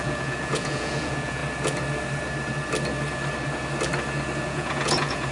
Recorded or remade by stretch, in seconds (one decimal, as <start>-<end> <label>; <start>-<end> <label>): 0.0-1.4 remade; 1.4-4.4 recorded; 4.4-5.3 remade